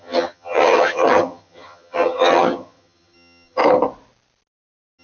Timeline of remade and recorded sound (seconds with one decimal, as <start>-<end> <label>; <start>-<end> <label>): 0.0-3.6 remade; 3.6-5.0 recorded